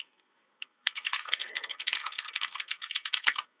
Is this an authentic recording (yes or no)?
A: no